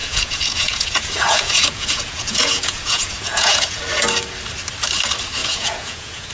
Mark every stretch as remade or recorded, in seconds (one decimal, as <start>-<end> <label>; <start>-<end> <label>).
0.0-3.8 remade; 3.8-5.4 recorded; 5.4-6.3 remade

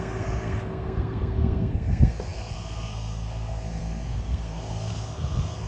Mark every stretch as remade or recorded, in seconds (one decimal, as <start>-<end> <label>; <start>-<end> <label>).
0.0-5.7 remade

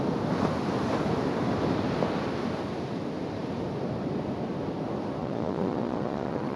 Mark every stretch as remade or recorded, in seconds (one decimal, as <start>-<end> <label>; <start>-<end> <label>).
0.0-5.2 recorded; 5.2-6.6 remade

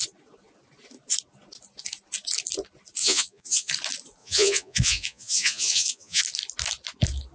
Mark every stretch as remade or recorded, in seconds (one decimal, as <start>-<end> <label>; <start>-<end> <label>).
0.0-3.0 recorded; 3.0-3.7 remade; 3.7-4.2 recorded; 4.2-6.2 remade; 6.2-7.3 recorded

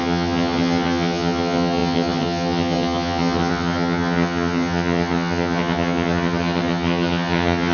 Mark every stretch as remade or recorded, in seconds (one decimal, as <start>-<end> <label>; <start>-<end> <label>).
0.0-7.7 remade

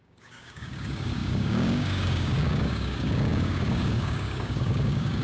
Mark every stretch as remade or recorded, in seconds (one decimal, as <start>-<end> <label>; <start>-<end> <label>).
0.0-5.2 remade